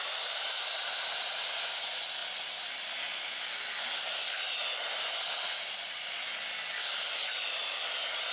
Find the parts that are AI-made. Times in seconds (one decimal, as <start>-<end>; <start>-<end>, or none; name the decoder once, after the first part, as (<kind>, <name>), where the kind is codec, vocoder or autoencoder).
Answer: none